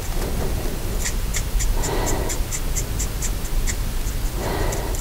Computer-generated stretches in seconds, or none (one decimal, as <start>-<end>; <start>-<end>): none